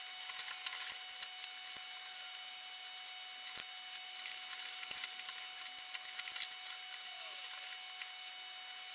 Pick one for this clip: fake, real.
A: real